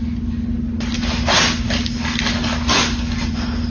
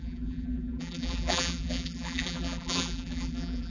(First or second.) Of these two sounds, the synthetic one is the second